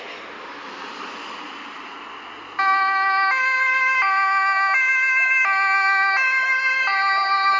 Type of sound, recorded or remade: recorded